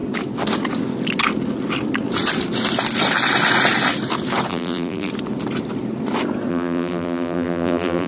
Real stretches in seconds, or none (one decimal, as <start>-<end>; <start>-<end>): 0.0-4.5; 5.1-6.5